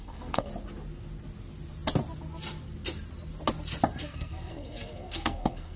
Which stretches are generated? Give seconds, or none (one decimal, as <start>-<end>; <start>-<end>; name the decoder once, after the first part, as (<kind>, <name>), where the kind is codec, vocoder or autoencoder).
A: 0.0-0.5 (codec, SNAC); 4.0-5.8